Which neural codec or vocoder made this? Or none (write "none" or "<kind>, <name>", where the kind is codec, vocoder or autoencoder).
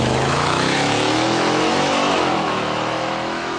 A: autoencoder, DAC-VAE